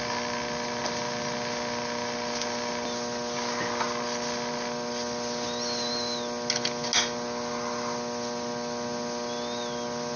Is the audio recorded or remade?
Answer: recorded